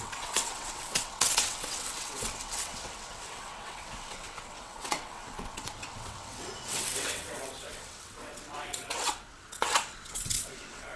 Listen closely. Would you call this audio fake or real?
fake